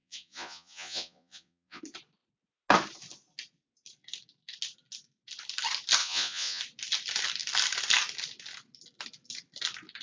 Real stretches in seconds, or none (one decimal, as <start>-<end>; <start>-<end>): 1.8-6.0; 6.6-10.0